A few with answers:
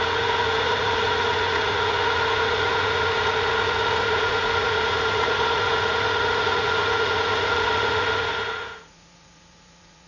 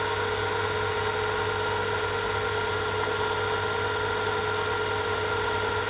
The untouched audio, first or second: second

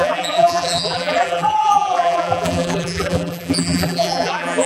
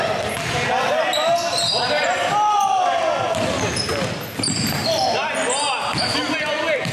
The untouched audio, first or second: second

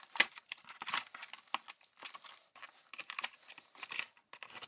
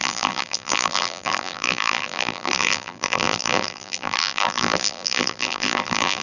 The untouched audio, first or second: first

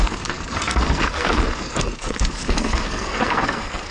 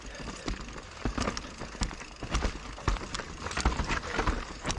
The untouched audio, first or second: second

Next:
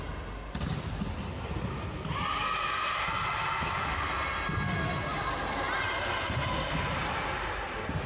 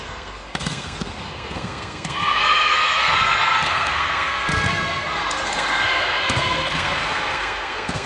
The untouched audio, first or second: first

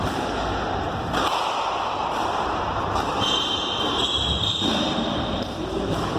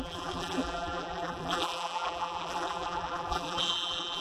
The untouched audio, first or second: first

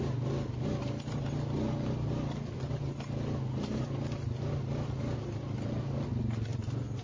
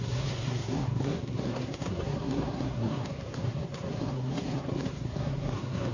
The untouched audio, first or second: first